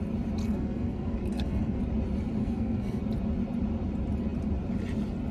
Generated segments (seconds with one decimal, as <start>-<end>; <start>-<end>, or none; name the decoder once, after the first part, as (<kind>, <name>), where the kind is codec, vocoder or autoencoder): 0.4-1.8 (codec, SNAC); 2.4-3.0